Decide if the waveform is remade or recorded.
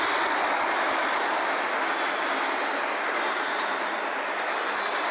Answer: recorded